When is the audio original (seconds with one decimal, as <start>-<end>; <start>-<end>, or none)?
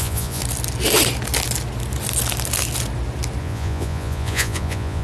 0.4-3.4